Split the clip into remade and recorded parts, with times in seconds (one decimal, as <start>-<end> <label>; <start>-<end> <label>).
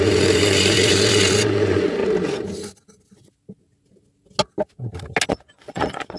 0.0-2.0 remade; 2.0-5.3 recorded; 5.3-6.2 remade